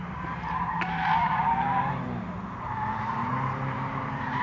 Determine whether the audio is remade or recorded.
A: remade